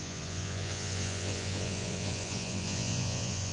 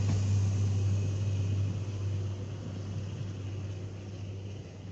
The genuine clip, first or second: second